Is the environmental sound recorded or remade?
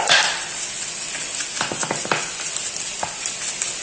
recorded